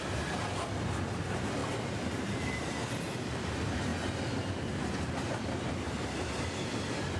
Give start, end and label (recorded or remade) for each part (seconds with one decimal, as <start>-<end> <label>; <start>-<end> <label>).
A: 0.0-1.6 recorded; 1.6-2.4 remade; 2.4-7.2 recorded